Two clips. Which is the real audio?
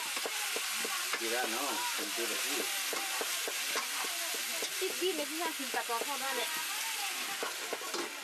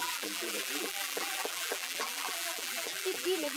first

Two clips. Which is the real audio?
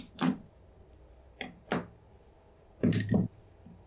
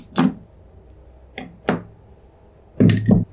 second